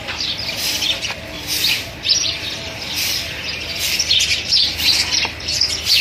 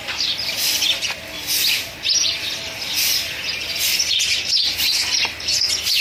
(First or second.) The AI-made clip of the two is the first